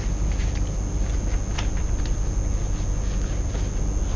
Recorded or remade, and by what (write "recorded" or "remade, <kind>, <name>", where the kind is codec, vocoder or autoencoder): recorded